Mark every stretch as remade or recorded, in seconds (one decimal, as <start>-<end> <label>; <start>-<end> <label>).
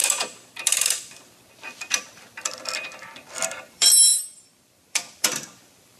0.0-6.0 remade